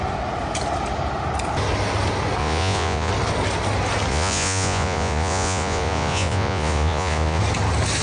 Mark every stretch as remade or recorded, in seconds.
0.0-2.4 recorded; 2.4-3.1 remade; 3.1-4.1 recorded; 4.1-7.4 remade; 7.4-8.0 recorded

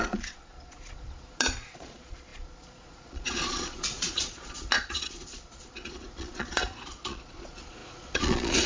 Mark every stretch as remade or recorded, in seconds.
0.0-8.7 remade

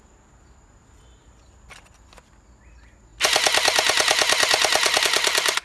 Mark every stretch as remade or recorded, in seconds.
0.0-5.6 recorded

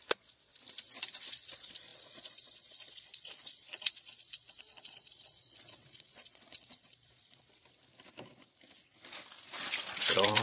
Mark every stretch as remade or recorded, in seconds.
0.0-0.5 remade; 0.5-1.2 recorded; 1.2-7.6 remade; 7.6-9.9 recorded; 9.9-10.4 remade

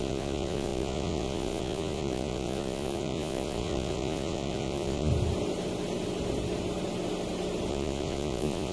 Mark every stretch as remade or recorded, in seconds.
0.0-5.1 remade; 5.1-7.7 recorded; 7.7-8.7 remade